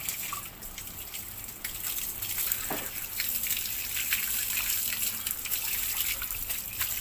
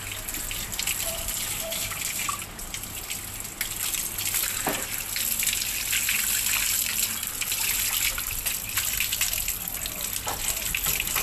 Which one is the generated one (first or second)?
first